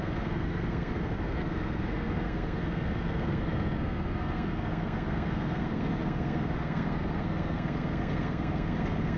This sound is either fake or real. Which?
fake